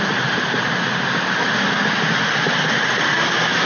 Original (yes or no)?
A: yes